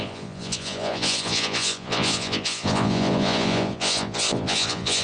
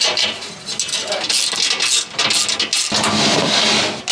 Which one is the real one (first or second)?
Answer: second